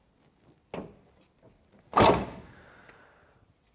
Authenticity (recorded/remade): recorded